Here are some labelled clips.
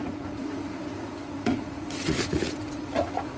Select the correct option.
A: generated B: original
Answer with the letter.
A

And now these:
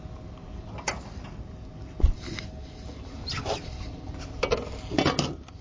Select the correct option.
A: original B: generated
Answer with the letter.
A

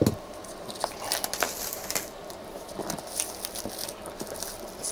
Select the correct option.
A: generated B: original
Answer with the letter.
B